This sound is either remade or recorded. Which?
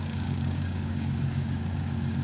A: remade